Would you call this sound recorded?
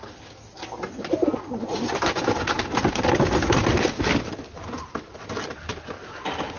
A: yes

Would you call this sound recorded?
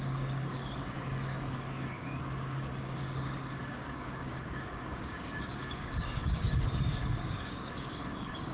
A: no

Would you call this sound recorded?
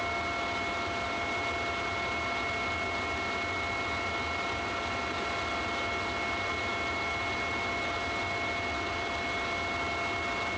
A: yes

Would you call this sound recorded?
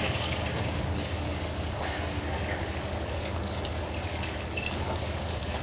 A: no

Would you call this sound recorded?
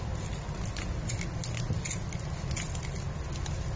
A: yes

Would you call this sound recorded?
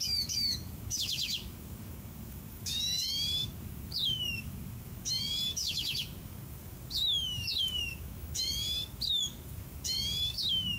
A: no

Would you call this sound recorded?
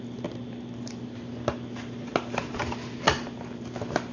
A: yes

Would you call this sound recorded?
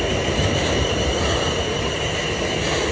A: yes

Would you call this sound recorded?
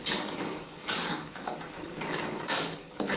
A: no